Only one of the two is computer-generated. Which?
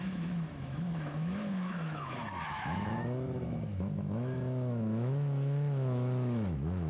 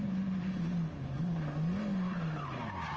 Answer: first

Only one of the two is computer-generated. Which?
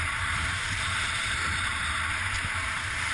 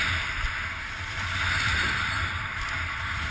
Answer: first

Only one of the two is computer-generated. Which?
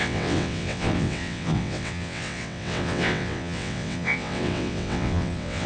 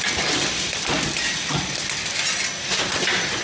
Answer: first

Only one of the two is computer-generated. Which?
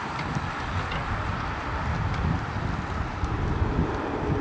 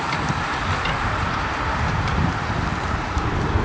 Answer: second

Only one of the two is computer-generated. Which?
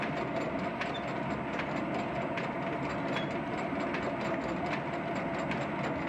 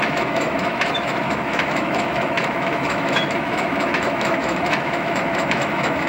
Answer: second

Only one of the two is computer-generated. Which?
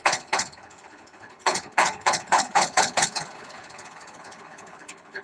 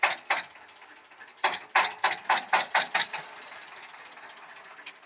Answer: first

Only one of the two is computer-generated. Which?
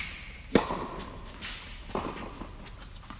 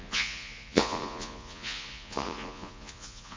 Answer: second